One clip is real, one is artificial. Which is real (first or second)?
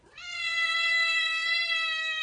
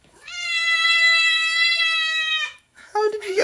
first